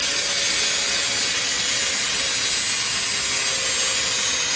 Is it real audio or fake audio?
real